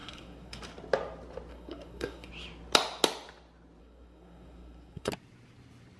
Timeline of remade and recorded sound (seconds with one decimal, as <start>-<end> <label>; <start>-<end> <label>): 0.0-0.6 remade; 0.6-1.5 recorded; 1.5-2.3 remade; 2.3-3.8 recorded; 3.8-5.1 remade; 5.1-6.0 recorded